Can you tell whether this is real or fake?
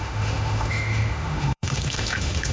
fake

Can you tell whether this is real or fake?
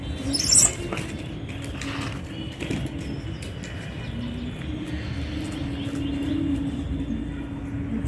real